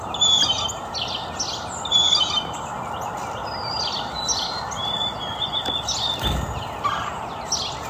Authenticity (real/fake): real